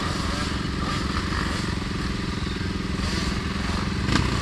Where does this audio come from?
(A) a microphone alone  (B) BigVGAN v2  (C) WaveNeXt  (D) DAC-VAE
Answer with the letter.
A